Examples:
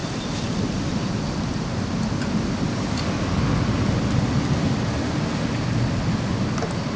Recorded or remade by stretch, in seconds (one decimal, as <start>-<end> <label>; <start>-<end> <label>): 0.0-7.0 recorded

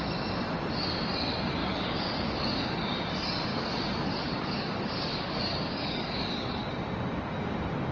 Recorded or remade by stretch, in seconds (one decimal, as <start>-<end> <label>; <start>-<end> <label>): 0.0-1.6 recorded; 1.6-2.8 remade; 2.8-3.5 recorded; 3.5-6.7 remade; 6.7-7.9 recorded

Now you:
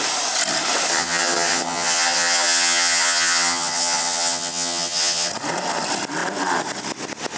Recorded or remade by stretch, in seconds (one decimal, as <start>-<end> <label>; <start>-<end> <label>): 0.0-0.9 recorded; 0.9-5.3 remade; 5.3-7.4 recorded

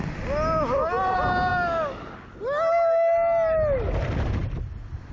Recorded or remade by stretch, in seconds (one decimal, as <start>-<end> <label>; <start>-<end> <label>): 0.0-5.1 recorded